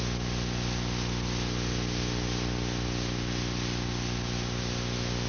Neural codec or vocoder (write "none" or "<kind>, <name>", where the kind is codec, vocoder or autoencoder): none